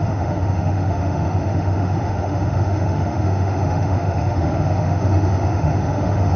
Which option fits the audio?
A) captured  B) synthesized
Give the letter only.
B